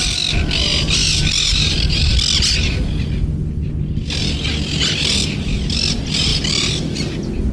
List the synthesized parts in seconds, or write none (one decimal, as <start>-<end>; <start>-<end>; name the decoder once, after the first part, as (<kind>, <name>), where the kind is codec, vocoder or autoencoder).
none